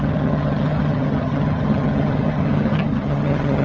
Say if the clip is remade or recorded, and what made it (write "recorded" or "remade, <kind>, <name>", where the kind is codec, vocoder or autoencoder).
remade, vocoder, HiFi-GAN